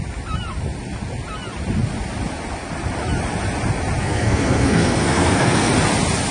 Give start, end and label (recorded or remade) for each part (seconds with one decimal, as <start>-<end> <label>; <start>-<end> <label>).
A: 0.0-4.0 recorded; 4.0-5.7 remade; 5.7-6.3 recorded

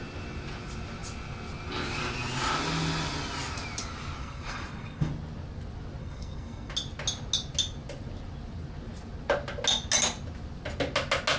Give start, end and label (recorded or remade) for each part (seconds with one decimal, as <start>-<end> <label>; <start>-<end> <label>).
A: 0.0-4.2 recorded; 4.2-5.1 remade; 5.1-6.0 recorded; 6.0-6.7 remade; 6.7-11.4 recorded

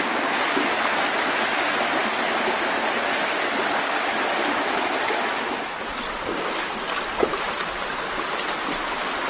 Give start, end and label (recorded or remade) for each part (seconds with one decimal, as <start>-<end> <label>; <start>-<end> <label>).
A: 0.0-9.3 recorded

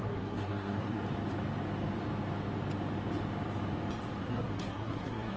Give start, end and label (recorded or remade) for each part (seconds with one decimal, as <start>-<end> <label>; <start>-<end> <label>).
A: 0.0-1.0 remade; 1.0-4.2 recorded; 4.2-5.4 remade